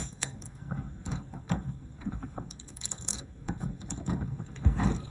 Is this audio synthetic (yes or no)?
yes